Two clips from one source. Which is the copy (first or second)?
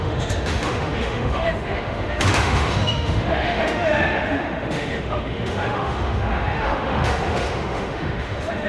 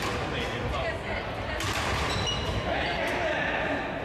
first